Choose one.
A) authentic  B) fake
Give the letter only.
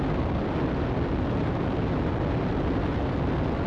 A